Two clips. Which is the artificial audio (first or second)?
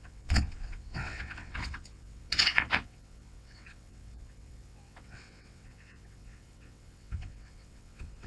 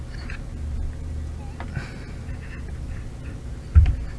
first